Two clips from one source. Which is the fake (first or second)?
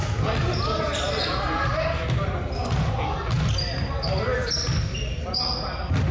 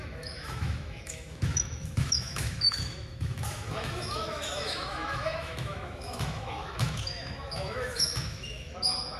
second